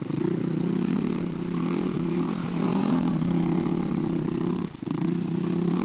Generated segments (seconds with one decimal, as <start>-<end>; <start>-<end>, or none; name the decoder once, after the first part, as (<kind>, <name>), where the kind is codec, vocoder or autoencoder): 0.0-5.8 (vocoder, Vocos)